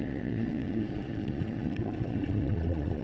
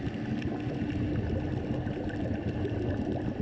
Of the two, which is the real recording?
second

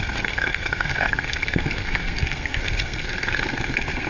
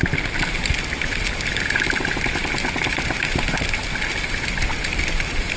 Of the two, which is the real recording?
second